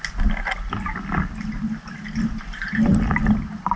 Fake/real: real